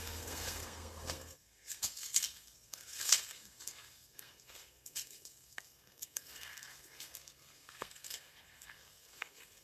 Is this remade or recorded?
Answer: remade